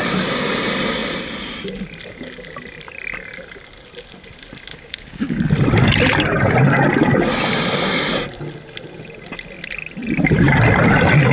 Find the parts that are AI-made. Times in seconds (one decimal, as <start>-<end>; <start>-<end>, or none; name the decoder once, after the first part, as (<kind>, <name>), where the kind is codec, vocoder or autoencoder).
4.7-5.4 (codec, DAC)